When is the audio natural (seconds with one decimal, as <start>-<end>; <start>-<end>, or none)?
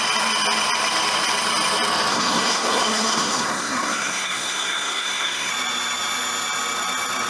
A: 0.0-2.1; 5.5-7.3